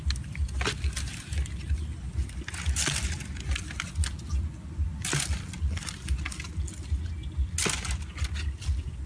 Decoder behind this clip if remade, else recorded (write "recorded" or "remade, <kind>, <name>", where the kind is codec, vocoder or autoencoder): recorded